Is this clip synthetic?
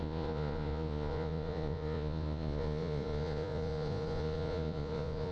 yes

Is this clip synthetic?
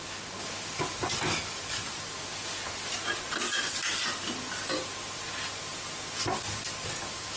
no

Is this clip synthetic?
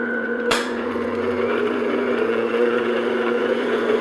yes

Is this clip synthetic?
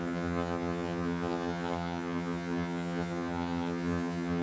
yes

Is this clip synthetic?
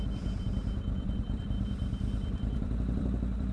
yes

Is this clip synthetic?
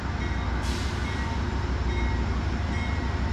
no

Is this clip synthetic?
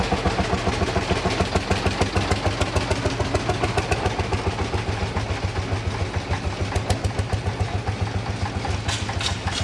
no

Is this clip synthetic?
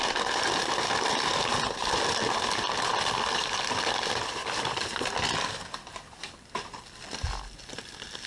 yes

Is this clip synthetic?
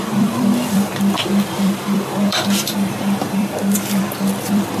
yes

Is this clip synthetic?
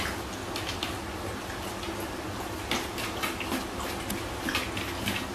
no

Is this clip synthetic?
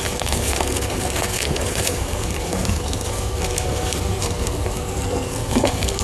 yes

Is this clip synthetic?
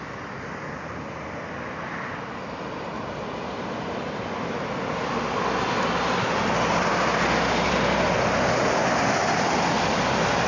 no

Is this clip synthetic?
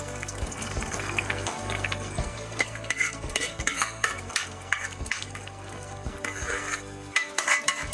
yes